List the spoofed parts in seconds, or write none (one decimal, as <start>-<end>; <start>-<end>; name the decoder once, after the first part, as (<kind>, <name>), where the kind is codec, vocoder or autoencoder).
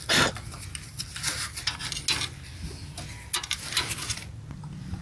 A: none